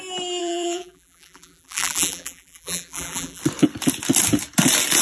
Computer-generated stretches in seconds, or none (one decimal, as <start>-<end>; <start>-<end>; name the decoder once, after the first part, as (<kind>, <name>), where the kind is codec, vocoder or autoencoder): 0.4-3.4 (vocoder, BigVGAN v2)